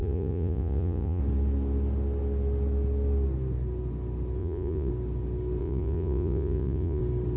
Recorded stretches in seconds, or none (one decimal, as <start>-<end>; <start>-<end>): 1.2-4.4; 4.9-5.6; 7.0-7.4